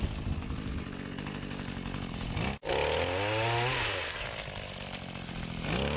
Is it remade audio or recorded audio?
recorded